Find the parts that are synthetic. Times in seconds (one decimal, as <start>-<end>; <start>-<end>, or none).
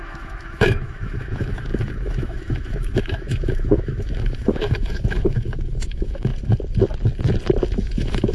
0.0-6.3; 7.8-8.3